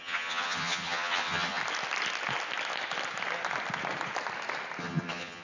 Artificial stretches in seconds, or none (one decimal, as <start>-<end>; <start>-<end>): 0.0-1.6; 4.8-5.4